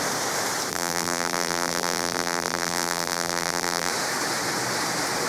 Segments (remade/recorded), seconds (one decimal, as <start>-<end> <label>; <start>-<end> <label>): 0.0-0.7 recorded; 0.7-3.9 remade; 3.9-5.3 recorded

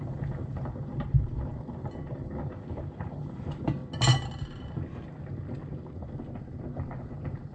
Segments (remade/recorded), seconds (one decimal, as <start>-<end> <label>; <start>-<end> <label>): 0.0-1.5 remade; 1.5-2.5 recorded; 2.5-3.8 remade; 3.8-6.4 recorded; 6.4-7.5 remade

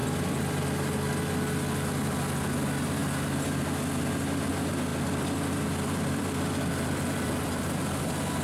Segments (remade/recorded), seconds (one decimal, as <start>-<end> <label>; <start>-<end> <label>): 0.0-0.6 remade; 0.6-4.9 recorded; 4.9-8.0 remade; 8.0-8.4 recorded

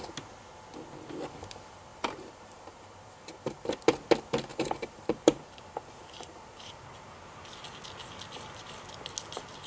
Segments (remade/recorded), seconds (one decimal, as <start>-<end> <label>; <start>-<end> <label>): 0.0-1.9 recorded; 1.9-3.8 remade; 3.8-4.5 recorded; 4.5-7.4 remade; 7.4-9.7 recorded

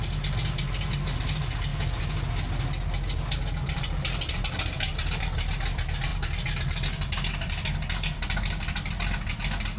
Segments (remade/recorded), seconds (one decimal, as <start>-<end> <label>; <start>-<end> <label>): 0.0-9.8 recorded

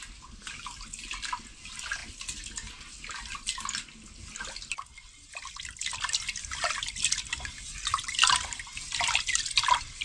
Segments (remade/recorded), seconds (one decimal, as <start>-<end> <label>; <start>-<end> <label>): 0.0-10.0 recorded